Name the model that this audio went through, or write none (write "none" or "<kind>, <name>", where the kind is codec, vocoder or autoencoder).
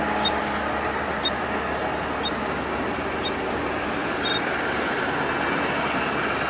none